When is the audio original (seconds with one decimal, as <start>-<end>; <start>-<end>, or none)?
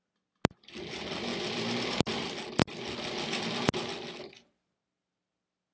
0.0-5.7